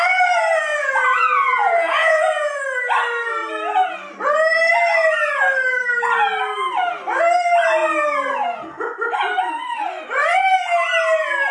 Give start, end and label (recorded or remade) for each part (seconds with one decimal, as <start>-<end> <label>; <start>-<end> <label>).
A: 0.0-0.7 recorded; 0.7-2.6 remade; 2.6-11.5 recorded